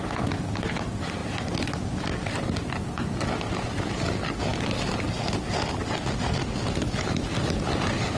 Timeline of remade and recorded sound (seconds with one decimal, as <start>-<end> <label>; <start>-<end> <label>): 0.0-8.2 recorded

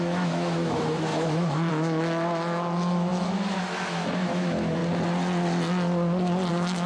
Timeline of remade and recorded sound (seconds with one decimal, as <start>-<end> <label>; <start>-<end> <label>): 0.0-4.8 remade; 4.8-6.5 recorded; 6.5-6.9 remade